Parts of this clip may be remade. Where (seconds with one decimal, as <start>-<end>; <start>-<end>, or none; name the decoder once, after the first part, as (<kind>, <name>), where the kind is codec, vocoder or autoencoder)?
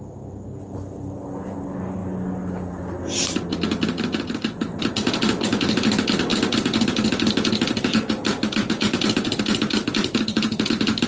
none